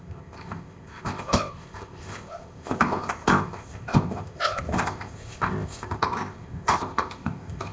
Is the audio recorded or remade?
remade